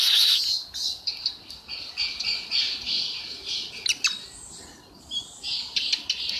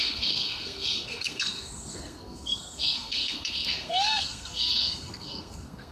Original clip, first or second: first